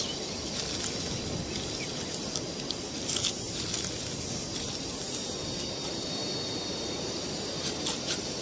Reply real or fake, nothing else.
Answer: real